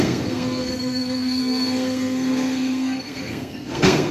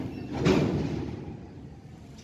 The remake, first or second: first